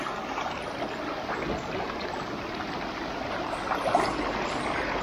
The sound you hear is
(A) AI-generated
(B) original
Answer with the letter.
B